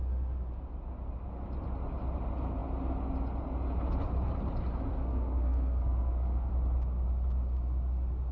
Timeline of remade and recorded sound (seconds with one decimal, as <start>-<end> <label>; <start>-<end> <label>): 0.0-4.9 recorded; 4.9-6.5 remade; 6.5-8.3 recorded